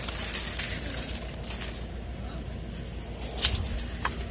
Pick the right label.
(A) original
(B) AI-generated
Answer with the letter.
A